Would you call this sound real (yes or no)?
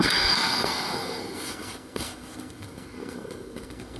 no